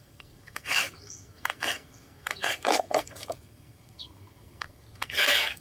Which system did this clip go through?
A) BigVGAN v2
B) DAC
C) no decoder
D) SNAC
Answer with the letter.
D